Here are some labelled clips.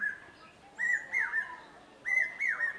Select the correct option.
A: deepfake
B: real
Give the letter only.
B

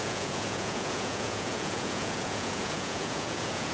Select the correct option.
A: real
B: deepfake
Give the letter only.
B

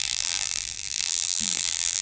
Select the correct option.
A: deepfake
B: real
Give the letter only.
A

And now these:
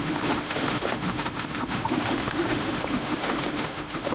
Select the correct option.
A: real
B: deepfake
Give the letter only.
B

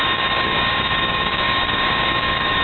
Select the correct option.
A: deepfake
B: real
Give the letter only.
A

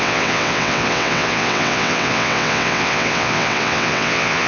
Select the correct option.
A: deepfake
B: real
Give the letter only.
A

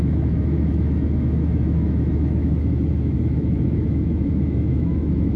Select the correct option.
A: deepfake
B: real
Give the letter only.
A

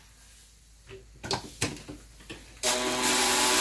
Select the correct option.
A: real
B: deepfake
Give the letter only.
A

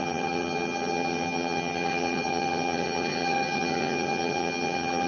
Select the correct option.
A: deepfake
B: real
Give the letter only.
A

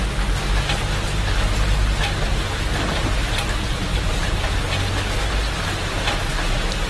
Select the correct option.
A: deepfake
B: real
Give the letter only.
B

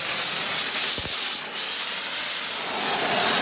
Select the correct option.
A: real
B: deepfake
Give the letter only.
A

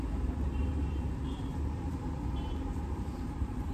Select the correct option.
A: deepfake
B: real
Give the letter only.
A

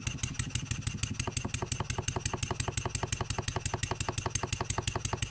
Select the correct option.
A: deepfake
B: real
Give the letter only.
B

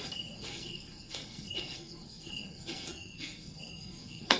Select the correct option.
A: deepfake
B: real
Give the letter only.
A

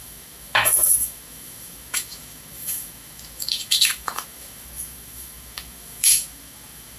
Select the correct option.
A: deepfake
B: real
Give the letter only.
A